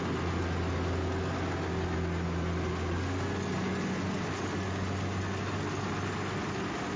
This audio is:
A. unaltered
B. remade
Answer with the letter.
A